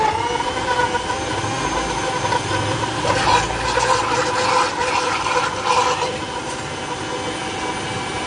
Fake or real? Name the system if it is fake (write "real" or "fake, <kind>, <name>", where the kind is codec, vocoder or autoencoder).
real